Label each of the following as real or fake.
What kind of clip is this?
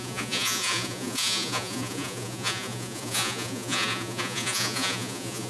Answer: fake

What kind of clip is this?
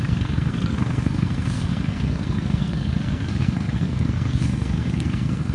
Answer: fake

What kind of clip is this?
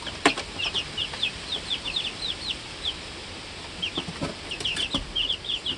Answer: fake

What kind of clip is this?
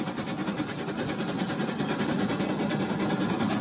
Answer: real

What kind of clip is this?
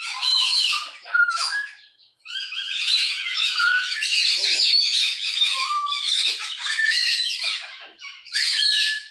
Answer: fake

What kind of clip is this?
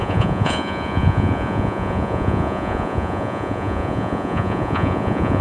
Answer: fake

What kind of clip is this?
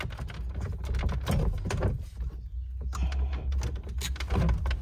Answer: real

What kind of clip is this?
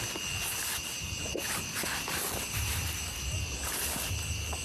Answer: real